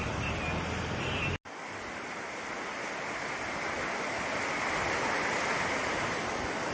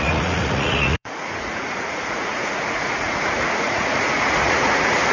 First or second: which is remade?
second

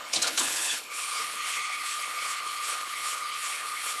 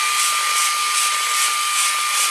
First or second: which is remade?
first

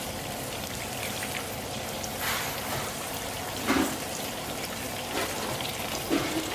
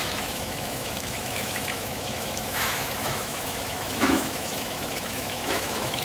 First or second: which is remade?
second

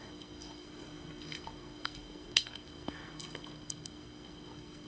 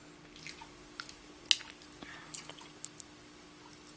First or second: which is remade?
first